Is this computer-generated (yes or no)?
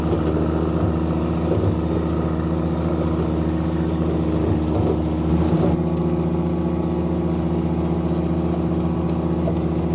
no